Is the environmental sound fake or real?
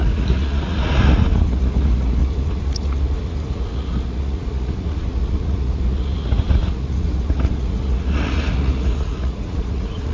fake